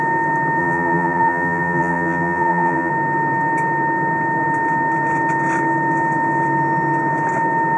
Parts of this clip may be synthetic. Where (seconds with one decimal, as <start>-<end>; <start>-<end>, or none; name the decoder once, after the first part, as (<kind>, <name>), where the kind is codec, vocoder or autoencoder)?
0.6-2.9 (vocoder, BigVGAN v2)